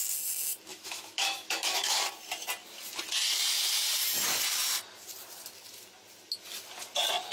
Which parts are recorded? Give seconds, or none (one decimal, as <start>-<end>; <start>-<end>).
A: 0.0-0.7; 2.1-7.3